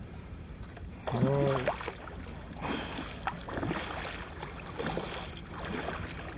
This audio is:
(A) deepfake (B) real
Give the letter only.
B